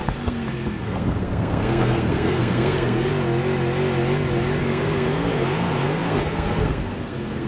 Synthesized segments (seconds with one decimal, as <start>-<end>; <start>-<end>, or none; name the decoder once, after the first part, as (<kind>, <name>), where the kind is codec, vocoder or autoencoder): 0.0-3.1 (codec, SNAC); 4.6-7.5